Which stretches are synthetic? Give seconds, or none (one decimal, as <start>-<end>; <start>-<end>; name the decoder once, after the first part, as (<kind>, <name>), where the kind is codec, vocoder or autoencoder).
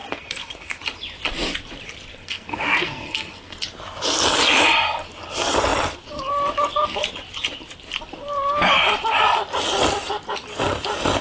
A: 0.0-0.8 (codec, SNAC); 2.1-3.6